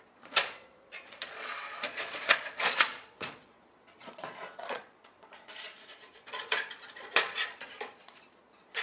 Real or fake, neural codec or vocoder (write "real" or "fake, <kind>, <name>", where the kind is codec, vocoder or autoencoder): fake, vocoder, Vocos